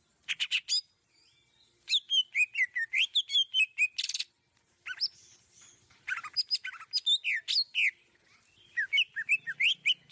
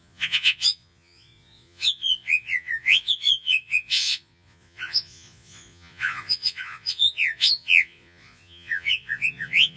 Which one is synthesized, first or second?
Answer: second